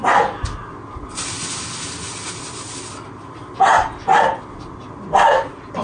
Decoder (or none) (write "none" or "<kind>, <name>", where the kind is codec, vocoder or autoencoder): none